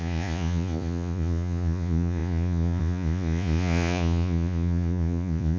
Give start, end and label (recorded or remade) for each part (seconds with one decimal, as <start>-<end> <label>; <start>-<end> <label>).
0.0-5.6 remade